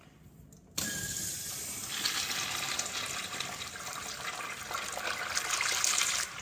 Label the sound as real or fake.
real